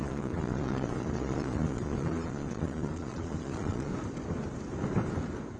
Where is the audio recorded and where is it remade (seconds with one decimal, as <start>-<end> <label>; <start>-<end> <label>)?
0.0-3.9 remade; 3.9-5.6 recorded